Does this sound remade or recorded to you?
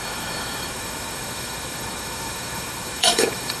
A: remade